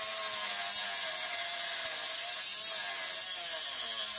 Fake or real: real